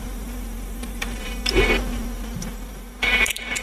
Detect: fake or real fake